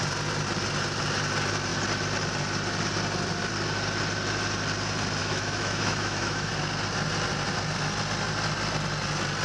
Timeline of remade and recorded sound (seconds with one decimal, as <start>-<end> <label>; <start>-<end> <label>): 0.0-5.2 recorded; 5.2-6.5 remade; 6.5-9.4 recorded